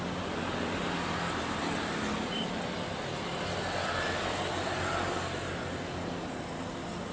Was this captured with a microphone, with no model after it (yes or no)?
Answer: yes